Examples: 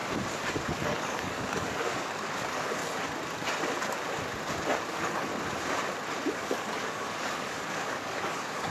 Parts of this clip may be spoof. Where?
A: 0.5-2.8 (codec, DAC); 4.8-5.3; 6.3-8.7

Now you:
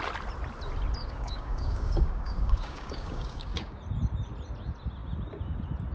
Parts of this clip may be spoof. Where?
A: 1.0-3.8 (codec, DAC)

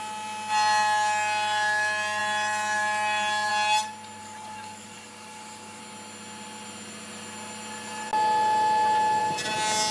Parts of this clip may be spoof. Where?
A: 4.2-5.8 (codec, DAC)

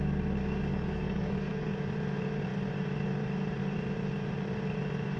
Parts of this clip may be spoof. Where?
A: 0.7-1.7 (codec, DAC)

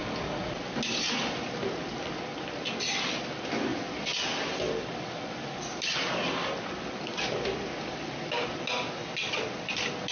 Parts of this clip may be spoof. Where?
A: none

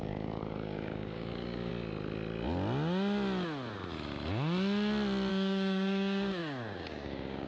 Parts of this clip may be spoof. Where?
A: 0.0-1.7 (codec, DAC); 5.3-7.5

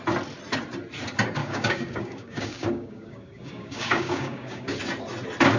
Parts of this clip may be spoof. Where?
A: 1.4-4.8 (codec, DAC)

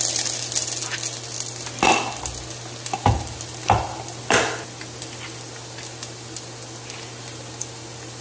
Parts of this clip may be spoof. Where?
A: none